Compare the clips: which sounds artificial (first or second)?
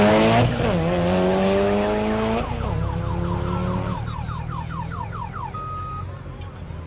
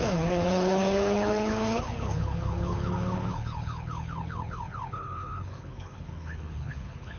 second